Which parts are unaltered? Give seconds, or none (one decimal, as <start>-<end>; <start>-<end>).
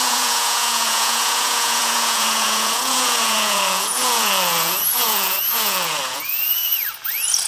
6.7-7.5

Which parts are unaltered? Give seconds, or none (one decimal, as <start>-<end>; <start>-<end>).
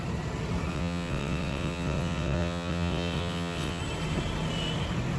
0.0-0.7; 3.8-5.2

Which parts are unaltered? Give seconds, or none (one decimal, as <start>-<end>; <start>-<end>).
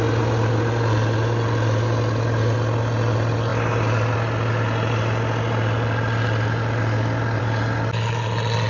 0.0-8.7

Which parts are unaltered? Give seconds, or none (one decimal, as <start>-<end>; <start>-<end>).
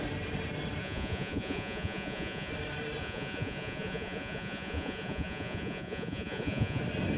0.0-0.8; 2.5-3.0; 6.8-7.2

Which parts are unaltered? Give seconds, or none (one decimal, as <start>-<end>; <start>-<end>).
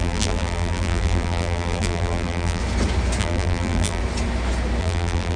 2.6-3.2; 4.0-4.8